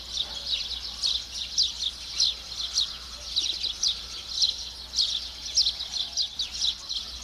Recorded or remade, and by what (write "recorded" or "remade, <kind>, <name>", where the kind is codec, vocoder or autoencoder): recorded